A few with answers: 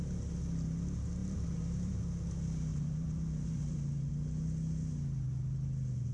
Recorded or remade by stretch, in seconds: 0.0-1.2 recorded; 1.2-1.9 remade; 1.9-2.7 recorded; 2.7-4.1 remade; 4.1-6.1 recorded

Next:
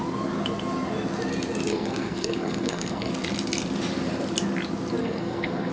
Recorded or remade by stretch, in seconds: 0.0-1.7 recorded; 1.7-3.1 remade; 3.1-5.0 recorded; 5.0-5.7 remade

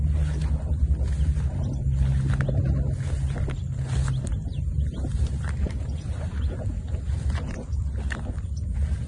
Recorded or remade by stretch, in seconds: 0.0-4.3 recorded; 4.3-8.0 remade; 8.0-9.1 recorded